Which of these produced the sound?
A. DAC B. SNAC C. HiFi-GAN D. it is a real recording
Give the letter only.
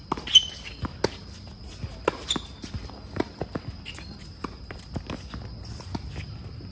D